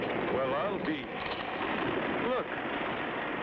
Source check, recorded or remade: recorded